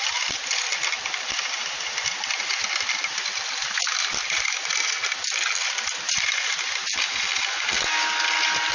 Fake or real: real